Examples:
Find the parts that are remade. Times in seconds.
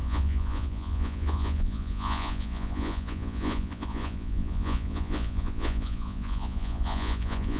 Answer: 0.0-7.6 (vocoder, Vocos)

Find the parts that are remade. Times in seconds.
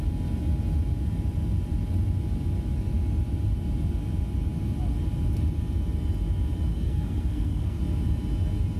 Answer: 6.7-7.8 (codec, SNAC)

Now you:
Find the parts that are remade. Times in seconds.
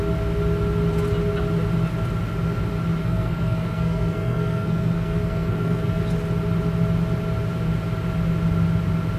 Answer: 3.0-6.0 (codec, SNAC)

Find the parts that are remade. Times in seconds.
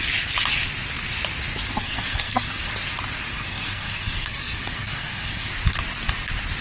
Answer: 1.8-2.7 (codec, SNAC); 3.3-5.5